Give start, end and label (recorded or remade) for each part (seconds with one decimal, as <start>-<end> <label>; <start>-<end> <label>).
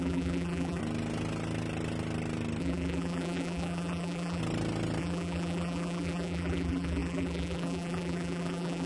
0.0-0.8 remade; 0.8-2.6 recorded; 2.6-4.4 remade; 4.4-5.0 recorded; 5.0-8.9 remade